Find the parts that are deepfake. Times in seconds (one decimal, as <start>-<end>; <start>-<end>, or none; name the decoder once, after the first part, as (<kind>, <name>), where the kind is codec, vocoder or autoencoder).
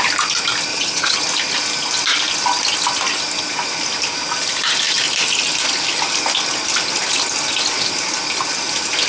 0.7-1.2 (vocoder, HiFi-GAN)